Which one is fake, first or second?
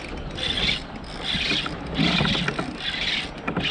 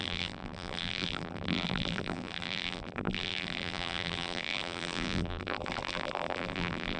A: second